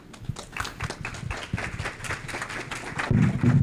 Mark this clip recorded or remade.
recorded